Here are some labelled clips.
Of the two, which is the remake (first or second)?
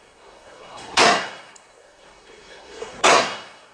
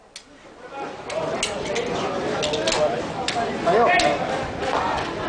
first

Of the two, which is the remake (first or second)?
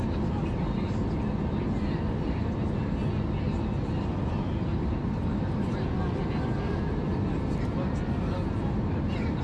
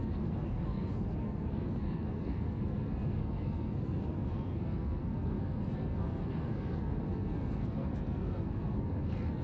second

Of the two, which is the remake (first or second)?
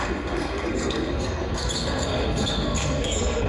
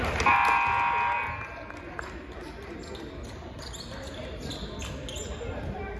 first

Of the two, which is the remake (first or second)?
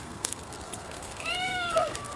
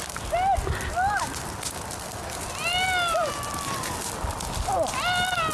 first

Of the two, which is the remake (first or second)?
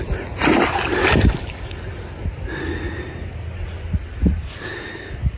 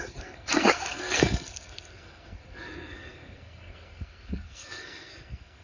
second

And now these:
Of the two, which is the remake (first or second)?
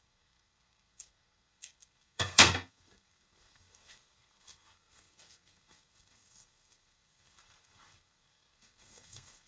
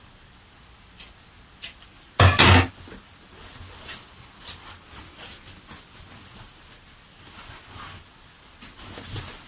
first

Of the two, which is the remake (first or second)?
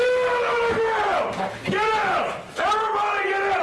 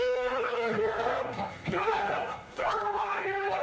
second